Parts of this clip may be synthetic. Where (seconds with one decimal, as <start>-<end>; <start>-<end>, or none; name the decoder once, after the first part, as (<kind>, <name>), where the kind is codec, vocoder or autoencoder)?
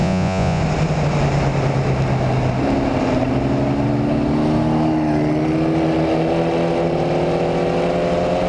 0.0-0.6 (vocoder, Vocos)